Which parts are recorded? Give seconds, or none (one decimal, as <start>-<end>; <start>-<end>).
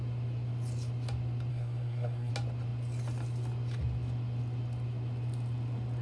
0.0-1.5; 2.3-6.0